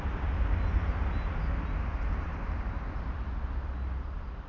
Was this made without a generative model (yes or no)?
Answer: yes